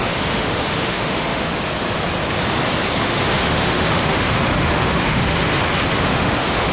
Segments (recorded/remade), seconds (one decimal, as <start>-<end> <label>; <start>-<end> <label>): 0.0-1.5 remade; 1.5-3.0 recorded; 3.0-5.5 remade; 5.5-6.0 recorded; 6.0-6.7 remade